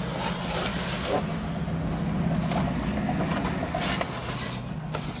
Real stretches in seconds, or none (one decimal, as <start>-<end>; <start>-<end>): 0.0-5.2